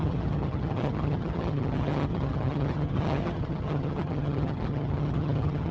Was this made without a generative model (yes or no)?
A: no